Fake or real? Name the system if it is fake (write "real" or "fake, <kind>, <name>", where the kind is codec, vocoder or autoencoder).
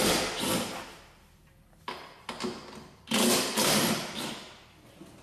real